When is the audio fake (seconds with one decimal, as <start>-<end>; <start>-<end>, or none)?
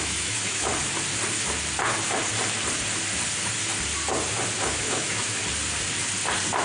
0.0-0.7; 4.7-5.4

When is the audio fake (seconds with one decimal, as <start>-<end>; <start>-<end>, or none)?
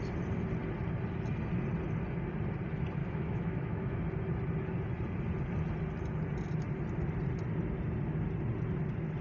3.0-4.0